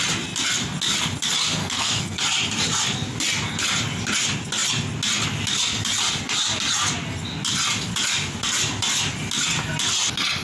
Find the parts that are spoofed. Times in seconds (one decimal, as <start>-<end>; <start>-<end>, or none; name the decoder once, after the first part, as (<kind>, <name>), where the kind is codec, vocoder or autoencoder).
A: 1.6-2.2 (codec, SNAC)